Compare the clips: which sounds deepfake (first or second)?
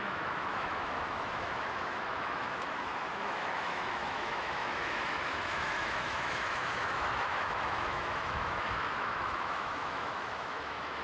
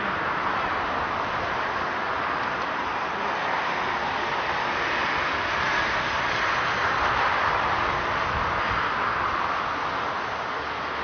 first